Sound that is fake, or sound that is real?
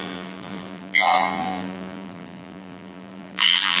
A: fake